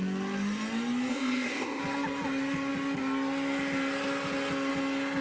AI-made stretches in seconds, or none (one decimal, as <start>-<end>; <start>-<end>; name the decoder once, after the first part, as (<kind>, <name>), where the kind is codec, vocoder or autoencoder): 1.1-1.8 (codec, ZipCodec)